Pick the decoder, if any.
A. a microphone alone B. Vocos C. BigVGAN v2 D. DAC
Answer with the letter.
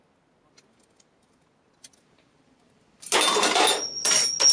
A